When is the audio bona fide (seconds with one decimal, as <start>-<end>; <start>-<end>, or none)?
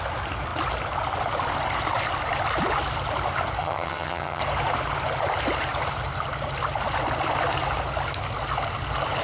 0.0-3.6; 4.4-9.2